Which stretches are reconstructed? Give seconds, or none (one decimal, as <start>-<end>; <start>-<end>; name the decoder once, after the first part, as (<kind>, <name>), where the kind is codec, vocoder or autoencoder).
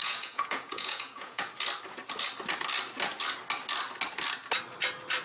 0.0-1.5 (vocoder, Vocos)